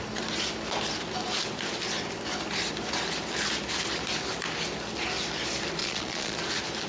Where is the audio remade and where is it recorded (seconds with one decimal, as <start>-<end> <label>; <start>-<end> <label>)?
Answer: 0.0-5.8 recorded; 5.8-6.4 remade; 6.4-6.9 recorded